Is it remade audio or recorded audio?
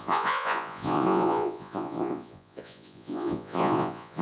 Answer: remade